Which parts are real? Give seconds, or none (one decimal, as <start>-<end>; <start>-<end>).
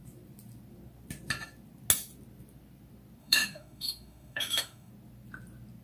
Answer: 0.0-3.2; 4.9-5.8